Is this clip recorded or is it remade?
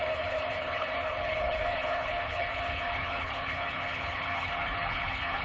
remade